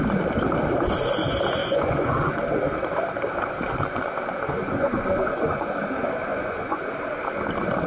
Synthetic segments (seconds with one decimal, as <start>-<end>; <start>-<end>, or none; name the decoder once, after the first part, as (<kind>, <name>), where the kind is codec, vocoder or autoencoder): 1.6-2.3 (vocoder, Vocos); 4.5-5.8; 6.3-6.9